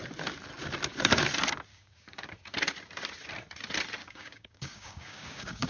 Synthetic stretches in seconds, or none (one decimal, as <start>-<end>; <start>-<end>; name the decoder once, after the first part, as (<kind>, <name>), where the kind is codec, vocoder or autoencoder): 1.7-2.3 (codec, DAC); 4.0-5.7